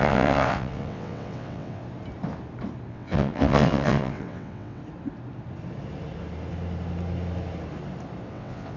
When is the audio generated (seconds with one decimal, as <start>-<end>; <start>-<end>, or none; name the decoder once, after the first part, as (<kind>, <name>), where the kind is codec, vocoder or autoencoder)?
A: 0.0-1.8 (vocoder, WaveNeXt); 2.9-4.8; 8.3-8.8